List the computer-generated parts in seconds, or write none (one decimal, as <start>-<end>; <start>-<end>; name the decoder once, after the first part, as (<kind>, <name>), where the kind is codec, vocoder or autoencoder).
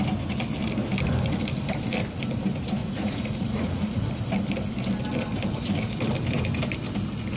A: 2.8-4.1 (vocoder, Vocos)